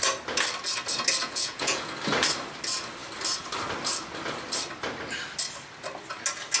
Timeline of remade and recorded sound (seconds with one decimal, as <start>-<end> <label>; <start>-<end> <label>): 0.0-1.2 recorded; 1.2-1.9 remade; 1.9-6.6 recorded